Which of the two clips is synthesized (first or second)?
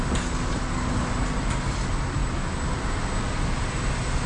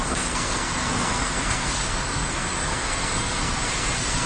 second